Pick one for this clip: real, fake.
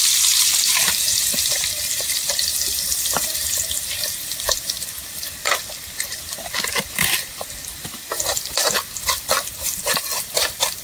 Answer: fake